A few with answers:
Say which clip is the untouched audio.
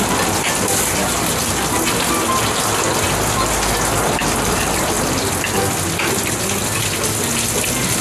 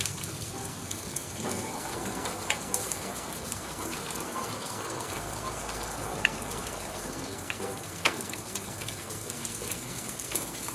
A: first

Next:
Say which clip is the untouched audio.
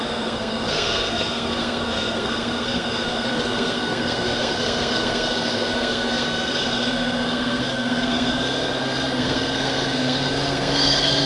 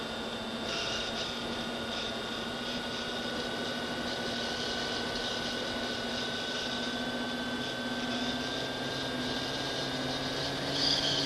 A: second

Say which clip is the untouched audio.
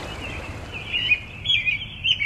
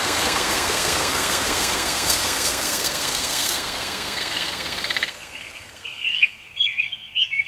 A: first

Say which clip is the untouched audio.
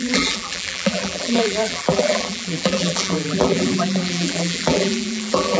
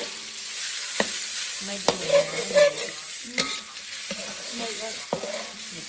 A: second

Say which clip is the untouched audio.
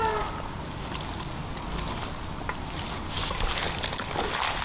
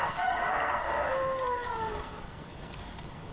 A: first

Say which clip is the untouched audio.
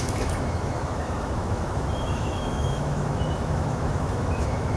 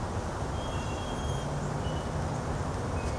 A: second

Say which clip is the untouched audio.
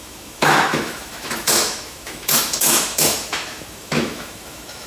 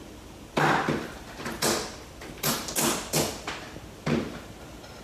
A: second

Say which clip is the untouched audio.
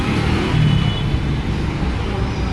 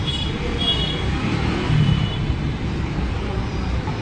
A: first